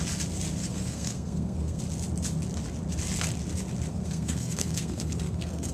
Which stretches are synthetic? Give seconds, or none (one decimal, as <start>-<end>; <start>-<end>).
0.6-1.8; 3.9-5.7